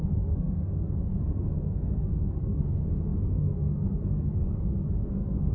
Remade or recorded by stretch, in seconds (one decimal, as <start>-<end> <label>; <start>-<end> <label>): 0.0-5.5 remade